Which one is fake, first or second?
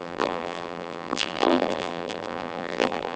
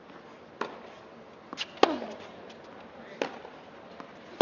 first